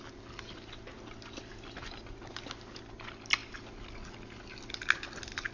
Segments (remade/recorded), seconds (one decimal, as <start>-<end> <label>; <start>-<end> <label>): 0.0-5.5 recorded